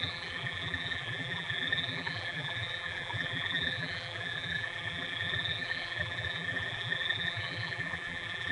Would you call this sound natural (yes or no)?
no